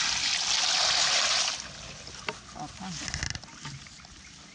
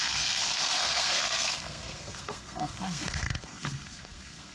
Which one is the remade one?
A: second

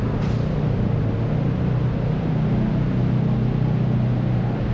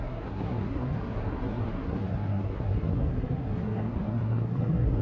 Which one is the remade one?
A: second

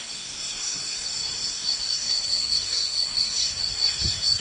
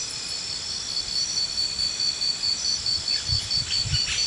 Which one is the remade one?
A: first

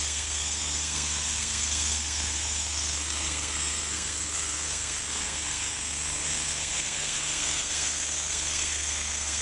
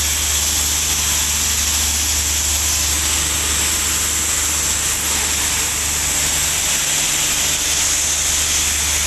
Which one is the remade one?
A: first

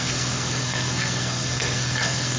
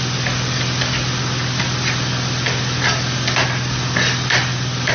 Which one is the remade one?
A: first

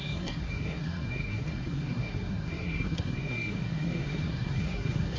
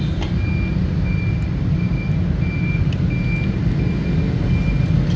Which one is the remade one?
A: first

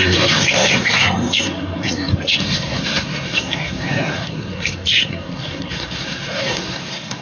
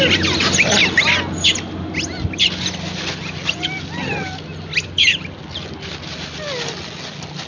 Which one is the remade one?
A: first